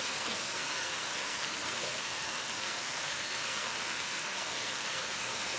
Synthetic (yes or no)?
yes